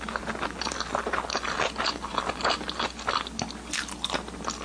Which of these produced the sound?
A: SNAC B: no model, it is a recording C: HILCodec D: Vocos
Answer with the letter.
B